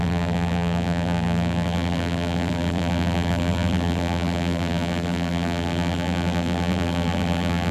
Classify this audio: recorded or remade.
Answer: remade